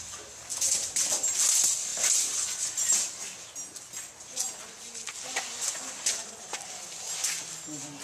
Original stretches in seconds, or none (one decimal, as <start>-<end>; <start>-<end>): 0.0-8.0